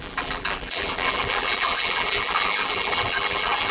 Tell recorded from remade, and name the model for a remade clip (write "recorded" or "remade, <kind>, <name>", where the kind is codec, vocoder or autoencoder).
remade, vocoder, BigVGAN v2